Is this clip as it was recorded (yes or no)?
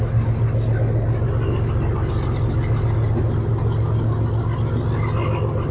yes